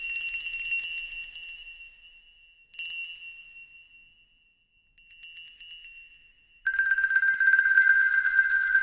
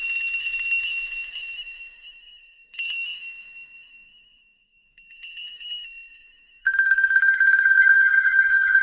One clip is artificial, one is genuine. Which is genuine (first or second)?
first